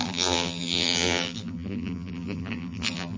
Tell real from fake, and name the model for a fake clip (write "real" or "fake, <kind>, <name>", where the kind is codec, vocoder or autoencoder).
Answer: fake, vocoder, BigVGAN v2